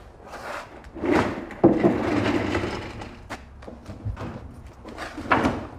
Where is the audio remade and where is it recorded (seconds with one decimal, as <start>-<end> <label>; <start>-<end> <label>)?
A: 0.0-0.8 recorded; 0.8-2.1 remade; 2.1-5.8 recorded